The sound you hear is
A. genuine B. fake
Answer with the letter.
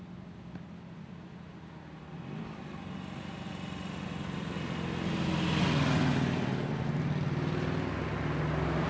A